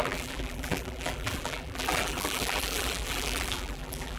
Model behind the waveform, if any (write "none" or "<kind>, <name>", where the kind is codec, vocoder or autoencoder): vocoder, BigVGAN v2